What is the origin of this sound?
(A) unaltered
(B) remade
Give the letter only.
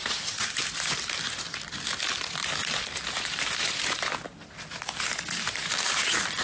A